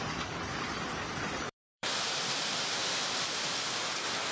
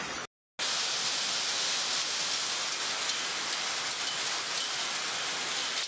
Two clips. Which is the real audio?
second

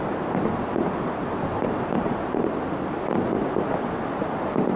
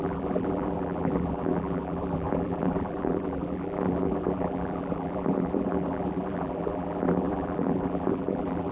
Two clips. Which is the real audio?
first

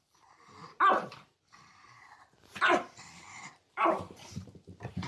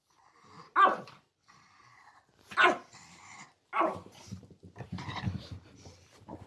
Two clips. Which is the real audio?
second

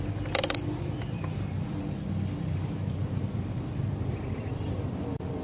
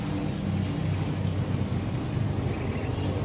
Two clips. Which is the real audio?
second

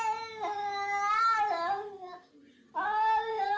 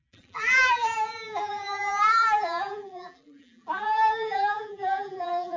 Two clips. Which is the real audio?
first